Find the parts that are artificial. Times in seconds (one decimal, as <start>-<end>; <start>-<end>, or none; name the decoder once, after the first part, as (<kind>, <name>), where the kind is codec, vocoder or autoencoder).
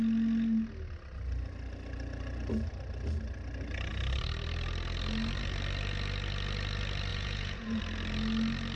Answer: 7.1-7.8 (vocoder, Vocos)